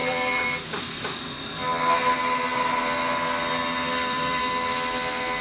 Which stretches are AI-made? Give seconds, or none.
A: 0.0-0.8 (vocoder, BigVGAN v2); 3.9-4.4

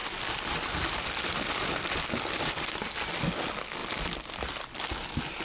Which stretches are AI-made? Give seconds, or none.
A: 0.0-2.5 (vocoder, BigVGAN v2); 3.8-4.3

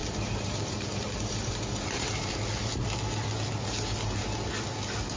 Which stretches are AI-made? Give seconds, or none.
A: 0.0-2.3 (vocoder, BigVGAN v2)

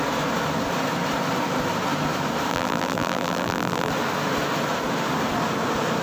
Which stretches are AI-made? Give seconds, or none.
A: 2.5-3.9 (vocoder, BigVGAN v2)

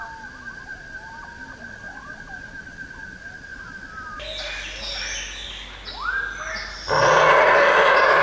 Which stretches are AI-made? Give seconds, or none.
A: none

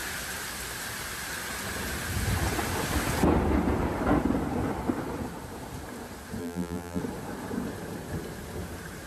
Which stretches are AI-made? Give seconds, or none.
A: 6.4-7.0 (vocoder, BigVGAN v2)